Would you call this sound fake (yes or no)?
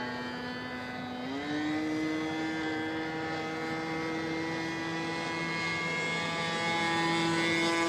no